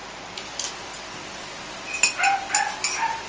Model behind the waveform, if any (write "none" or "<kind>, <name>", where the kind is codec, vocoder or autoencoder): none